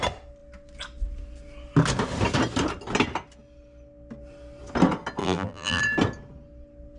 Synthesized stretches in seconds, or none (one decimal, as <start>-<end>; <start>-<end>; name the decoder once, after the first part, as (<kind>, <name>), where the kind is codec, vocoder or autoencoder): 5.2-5.8 (vocoder, BigVGAN v2)